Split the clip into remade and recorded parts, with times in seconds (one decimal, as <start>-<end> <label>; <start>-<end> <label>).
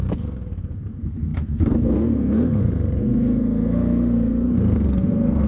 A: 0.0-5.5 remade